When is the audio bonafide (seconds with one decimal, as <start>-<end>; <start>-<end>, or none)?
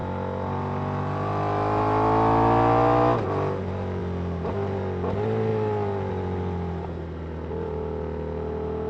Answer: 0.0-8.9